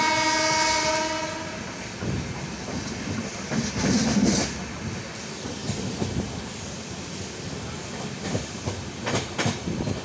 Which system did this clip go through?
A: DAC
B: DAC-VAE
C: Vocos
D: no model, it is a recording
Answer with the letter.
D